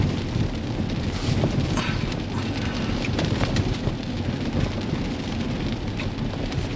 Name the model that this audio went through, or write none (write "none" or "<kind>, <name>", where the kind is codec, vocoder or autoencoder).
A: none